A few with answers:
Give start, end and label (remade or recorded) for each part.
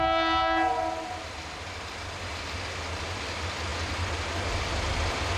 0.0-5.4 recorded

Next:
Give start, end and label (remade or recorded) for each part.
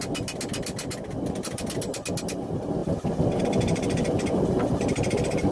0.0-5.5 recorded